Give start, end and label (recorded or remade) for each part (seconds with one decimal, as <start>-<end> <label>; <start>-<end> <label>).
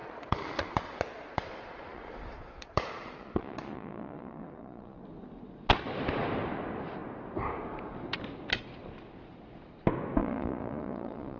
0.0-5.0 remade; 5.0-10.2 recorded; 10.2-11.4 remade